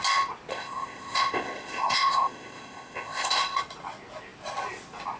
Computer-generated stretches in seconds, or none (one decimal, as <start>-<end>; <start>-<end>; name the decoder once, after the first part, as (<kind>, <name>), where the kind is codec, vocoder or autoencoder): 0.5-3.6 (codec, ZipCodec)